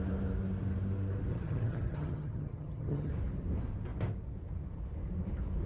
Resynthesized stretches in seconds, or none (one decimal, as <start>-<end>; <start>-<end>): 1.3-3.1